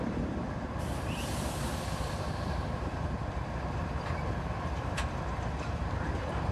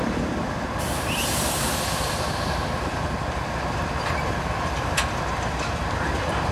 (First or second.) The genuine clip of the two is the second